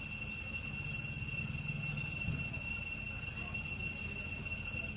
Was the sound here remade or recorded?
recorded